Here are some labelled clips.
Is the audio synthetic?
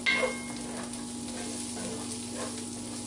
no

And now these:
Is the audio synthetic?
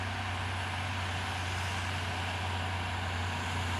no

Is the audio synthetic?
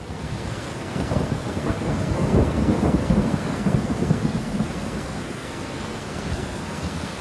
yes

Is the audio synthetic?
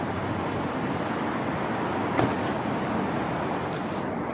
no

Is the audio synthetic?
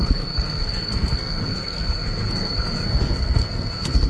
yes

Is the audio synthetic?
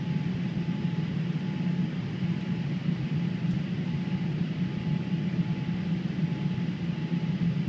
no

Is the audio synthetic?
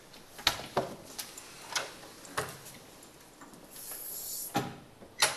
no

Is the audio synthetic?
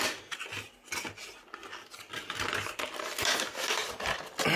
no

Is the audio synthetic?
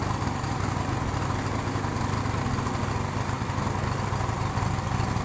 no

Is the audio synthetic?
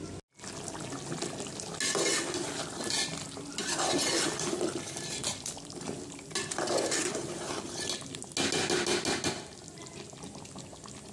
no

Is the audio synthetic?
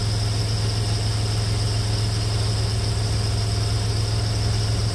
no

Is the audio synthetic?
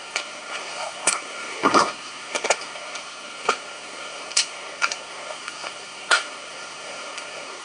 yes